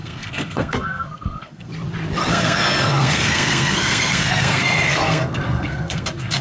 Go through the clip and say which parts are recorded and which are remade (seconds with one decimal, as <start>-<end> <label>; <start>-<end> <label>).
0.0-1.7 remade; 1.7-2.3 recorded; 2.3-6.4 remade